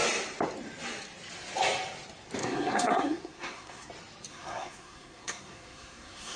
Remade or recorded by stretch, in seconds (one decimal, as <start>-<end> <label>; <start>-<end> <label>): 0.0-2.4 recorded; 2.4-3.9 remade; 3.9-4.3 recorded; 4.3-6.4 remade